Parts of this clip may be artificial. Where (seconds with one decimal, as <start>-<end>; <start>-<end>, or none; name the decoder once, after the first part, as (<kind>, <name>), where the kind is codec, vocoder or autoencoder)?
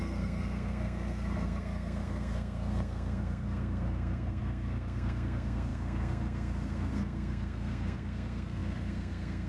0.0-9.5 (codec, SNAC)